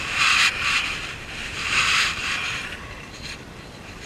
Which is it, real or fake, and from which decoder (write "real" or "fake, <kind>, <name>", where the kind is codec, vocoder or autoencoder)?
fake, vocoder, BigVGAN v2